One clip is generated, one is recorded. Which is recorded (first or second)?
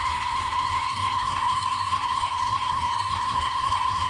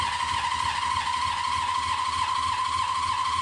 second